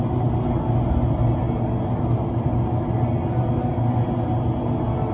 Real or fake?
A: real